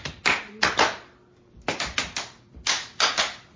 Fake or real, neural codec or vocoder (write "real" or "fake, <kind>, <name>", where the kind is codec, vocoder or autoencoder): fake, vocoder, BigVGAN v2